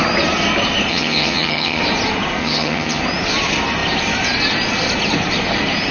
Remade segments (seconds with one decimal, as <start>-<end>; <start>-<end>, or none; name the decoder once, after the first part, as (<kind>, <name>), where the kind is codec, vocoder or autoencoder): 0.9-1.8 (vocoder, HiFi-GAN); 2.4-3.0